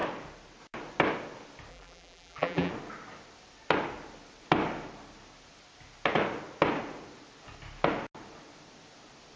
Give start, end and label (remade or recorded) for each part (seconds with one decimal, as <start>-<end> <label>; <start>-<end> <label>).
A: 0.0-1.7 recorded; 1.7-2.7 remade; 2.7-9.4 recorded